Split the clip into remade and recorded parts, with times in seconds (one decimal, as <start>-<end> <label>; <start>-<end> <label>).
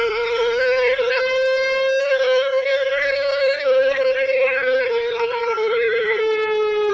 0.0-1.2 remade; 1.2-2.0 recorded; 2.0-6.2 remade; 6.2-6.9 recorded